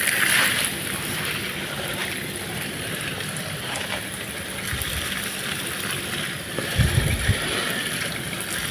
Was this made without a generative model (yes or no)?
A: no